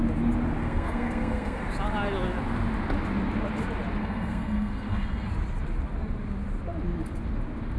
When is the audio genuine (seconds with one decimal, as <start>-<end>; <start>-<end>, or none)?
0.0-0.6; 1.6-4.0; 5.3-7.8